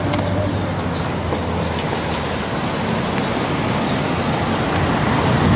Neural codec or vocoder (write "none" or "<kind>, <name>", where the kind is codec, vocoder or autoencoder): none